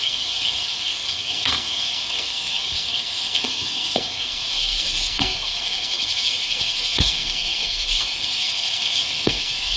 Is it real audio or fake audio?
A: fake